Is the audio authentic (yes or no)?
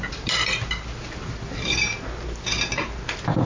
yes